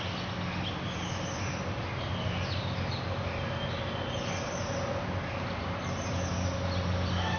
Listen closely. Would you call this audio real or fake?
real